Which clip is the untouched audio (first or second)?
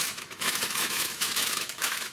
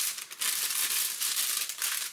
second